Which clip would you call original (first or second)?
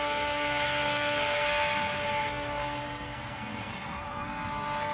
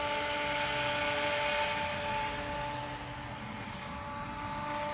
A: second